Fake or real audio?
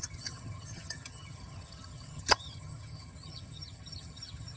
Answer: fake